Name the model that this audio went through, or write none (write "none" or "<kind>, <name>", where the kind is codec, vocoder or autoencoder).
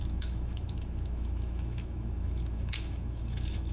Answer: autoencoder, DAC-VAE